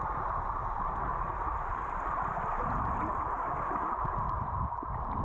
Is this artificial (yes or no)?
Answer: no